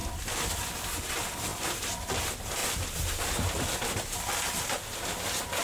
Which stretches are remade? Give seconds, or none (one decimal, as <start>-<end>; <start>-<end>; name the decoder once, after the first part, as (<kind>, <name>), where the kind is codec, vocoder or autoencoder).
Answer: 1.5-2.2 (vocoder, BigVGAN v2); 2.6-4.6